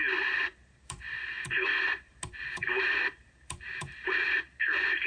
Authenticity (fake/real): fake